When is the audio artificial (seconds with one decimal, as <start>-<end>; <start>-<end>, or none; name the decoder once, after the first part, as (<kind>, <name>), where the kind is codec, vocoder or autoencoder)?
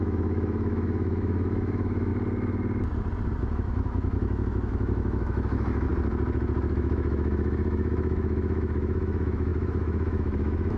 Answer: 0.0-2.1 (autoencoder, DAC-VAE); 3.4-5.9; 6.7-10.8